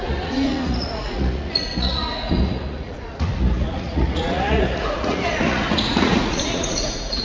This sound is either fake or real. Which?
fake